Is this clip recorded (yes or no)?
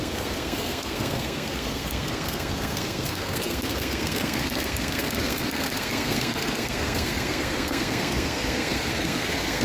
no